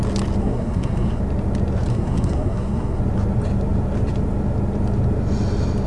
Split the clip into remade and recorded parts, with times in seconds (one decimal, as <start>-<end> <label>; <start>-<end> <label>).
0.0-0.4 recorded; 0.4-1.2 remade; 1.2-1.9 recorded; 1.9-3.0 remade; 3.0-5.9 recorded